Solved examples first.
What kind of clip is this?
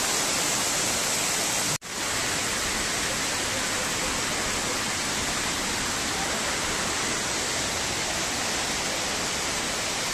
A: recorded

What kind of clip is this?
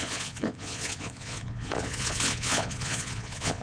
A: remade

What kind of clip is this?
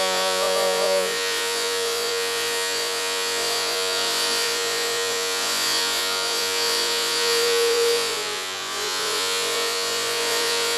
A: remade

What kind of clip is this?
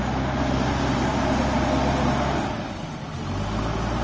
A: recorded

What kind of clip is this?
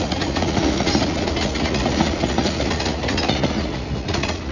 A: remade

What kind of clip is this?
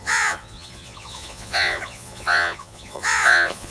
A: remade